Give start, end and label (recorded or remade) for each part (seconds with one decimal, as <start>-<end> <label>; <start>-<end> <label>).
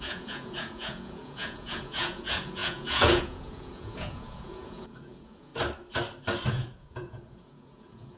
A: 0.0-5.5 remade; 5.5-6.5 recorded; 6.5-8.2 remade